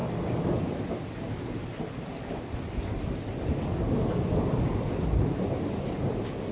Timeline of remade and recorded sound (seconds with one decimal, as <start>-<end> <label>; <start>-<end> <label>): 0.0-6.5 recorded